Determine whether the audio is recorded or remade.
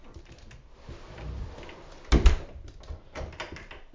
recorded